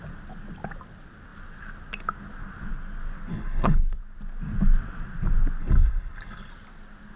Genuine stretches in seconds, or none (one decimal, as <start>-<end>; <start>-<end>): 0.0-3.3; 4.0-5.6; 6.5-7.2